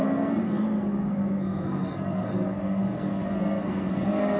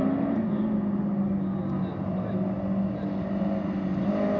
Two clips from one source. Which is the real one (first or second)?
second